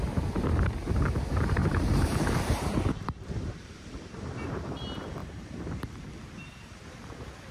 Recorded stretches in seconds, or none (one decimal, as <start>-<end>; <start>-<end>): 0.0-1.6; 4.8-5.2; 5.9-7.5